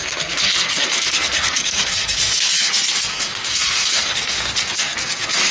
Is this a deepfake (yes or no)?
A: yes